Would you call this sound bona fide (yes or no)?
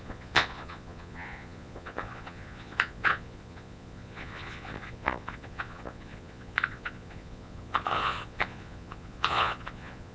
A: no